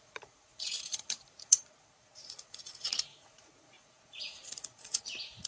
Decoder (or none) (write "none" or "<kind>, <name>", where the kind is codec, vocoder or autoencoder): vocoder, Vocos